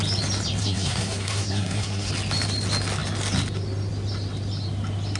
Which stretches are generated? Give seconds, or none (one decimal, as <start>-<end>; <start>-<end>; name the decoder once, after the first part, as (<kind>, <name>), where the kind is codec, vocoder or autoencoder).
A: 0.6-2.1 (codec, SNAC)

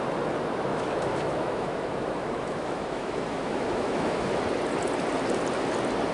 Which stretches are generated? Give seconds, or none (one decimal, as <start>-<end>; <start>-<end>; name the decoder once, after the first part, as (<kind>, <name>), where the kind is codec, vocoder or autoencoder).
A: 0.7-4.4 (autoencoder, DAC-VAE)

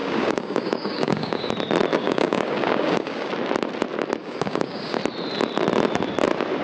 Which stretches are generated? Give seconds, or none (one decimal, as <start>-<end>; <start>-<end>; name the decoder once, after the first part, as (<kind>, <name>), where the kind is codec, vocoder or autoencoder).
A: 0.0-1.5 (codec, DAC); 1.9-3.3; 4.2-5.0

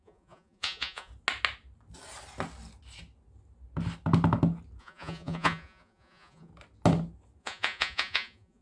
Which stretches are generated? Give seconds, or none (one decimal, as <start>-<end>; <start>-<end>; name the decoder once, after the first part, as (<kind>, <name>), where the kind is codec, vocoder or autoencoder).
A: 0.0-1.1 (vocoder, Vocos); 4.8-6.5; 7.4-8.6